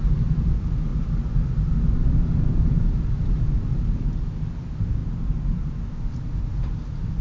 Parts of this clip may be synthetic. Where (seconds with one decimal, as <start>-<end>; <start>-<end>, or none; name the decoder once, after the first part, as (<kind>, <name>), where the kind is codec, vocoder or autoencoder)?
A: none